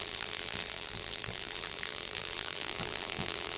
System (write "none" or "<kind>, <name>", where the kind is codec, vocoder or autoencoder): vocoder, BigVGAN v2